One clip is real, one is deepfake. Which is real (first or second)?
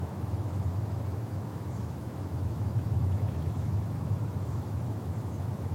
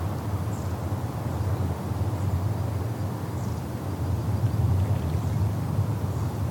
second